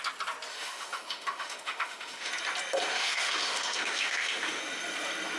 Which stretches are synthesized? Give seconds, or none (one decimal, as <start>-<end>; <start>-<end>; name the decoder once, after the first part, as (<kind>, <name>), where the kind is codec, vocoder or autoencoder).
0.5-2.3 (autoencoder, DAC-VAE); 2.9-4.6